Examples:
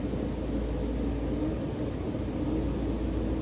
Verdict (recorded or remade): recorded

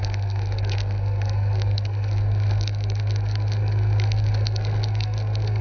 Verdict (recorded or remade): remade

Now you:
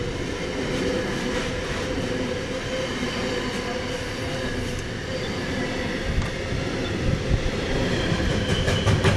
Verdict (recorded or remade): recorded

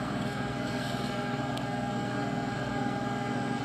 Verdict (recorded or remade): remade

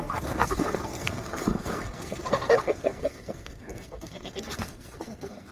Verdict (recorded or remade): remade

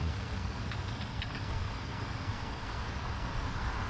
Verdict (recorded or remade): remade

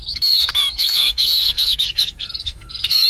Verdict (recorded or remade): remade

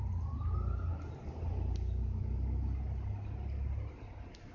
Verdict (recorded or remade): recorded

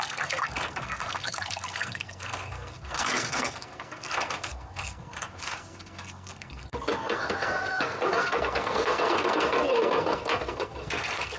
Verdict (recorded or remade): remade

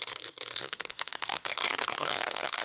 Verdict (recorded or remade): remade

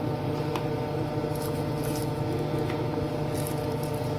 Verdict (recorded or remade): recorded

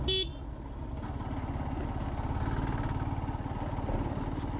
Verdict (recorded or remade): recorded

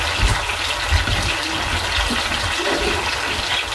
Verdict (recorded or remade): recorded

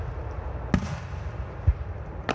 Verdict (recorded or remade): recorded